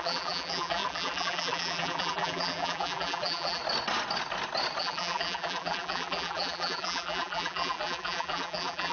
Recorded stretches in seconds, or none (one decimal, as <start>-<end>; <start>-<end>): 3.6-4.8